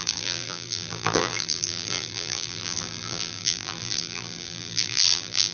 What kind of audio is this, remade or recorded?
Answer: remade